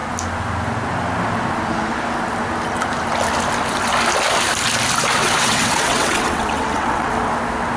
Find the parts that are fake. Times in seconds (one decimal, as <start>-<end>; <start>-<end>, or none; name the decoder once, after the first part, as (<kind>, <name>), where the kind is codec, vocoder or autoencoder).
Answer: 5.2-7.1 (vocoder, WaveNeXt)

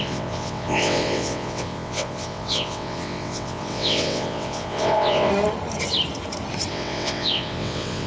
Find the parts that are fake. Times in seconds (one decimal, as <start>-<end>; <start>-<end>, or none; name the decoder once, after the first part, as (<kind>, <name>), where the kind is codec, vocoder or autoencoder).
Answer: 0.0-5.3 (vocoder, WaveNeXt); 6.7-8.1

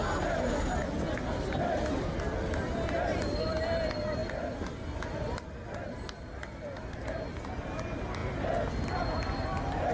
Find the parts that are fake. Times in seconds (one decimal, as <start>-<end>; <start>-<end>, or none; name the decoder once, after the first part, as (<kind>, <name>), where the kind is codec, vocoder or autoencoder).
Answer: none

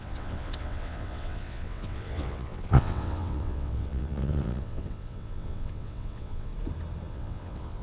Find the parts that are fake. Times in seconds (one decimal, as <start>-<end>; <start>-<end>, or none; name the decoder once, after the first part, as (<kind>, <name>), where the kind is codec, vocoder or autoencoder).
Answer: 0.0-6.5 (vocoder, WaveNeXt); 7.1-7.8

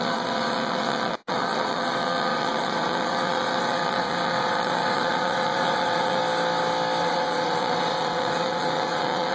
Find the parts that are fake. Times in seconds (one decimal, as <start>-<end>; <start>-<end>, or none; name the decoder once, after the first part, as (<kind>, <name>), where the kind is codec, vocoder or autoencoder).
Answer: 0.0-6.2 (vocoder, WaveNeXt); 7.0-9.3

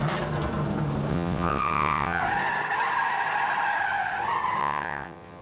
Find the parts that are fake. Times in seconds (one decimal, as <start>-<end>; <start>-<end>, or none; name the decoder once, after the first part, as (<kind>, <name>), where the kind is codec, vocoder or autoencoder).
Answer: 1.1-2.2 (vocoder, WaveNeXt); 4.6-5.4